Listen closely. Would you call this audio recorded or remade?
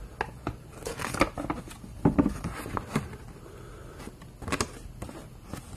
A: recorded